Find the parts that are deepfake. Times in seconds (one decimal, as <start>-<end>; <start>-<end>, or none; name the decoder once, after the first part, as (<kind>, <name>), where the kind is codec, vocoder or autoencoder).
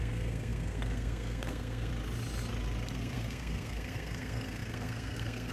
0.0-1.9 (codec, SNAC); 2.9-5.5